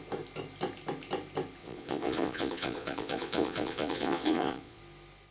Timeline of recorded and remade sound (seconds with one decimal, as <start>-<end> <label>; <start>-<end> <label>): 0.0-1.6 recorded; 1.6-4.8 remade; 4.8-5.3 recorded